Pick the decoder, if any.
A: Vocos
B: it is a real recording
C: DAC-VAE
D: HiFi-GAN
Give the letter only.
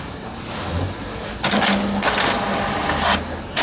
B